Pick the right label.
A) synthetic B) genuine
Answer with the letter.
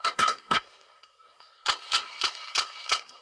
A